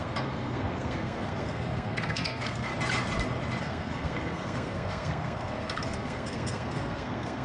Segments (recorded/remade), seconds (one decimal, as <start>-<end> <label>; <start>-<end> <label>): 0.0-2.7 remade; 2.7-3.6 recorded; 3.6-7.4 remade